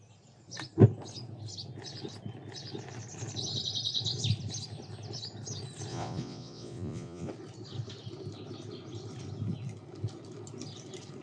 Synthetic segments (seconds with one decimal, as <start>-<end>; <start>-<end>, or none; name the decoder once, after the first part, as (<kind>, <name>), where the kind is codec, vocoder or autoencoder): 5.9-7.3 (vocoder, Vocos)